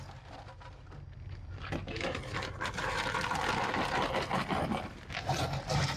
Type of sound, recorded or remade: recorded